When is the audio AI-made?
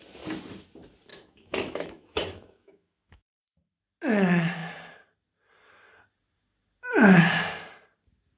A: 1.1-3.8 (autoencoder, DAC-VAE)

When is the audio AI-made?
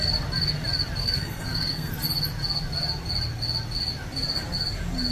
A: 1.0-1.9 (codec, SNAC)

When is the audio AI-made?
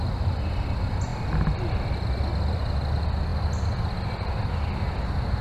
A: none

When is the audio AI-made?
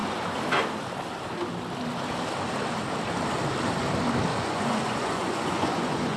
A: 4.3-6.2 (vocoder, Vocos)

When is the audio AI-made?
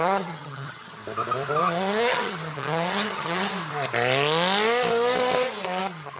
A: 0.0-1.0 (vocoder, HiFi-GAN); 1.6-3.5; 5.8-6.2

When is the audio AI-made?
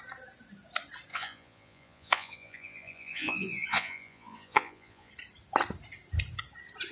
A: 1.1-5.1 (vocoder, Vocos)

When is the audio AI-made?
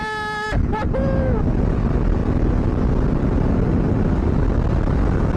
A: none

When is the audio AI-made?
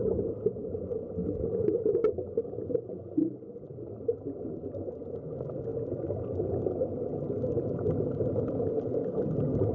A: none